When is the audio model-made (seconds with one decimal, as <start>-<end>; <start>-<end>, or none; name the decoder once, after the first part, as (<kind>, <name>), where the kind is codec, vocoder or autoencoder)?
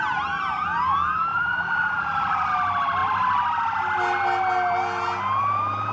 1.3-2.5 (vocoder, Vocos)